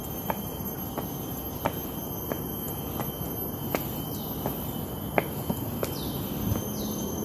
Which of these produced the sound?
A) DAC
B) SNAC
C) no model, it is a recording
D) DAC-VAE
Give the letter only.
C